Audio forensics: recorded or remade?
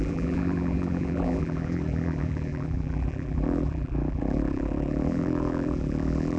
remade